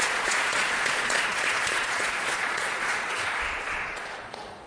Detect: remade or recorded remade